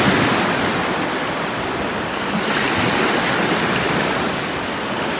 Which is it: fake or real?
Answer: real